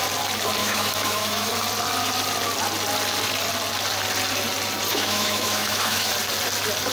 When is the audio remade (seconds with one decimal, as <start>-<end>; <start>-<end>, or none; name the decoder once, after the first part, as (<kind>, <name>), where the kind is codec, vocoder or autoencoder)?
0.6-1.5 (autoencoder, DAC-VAE); 4.9-6.1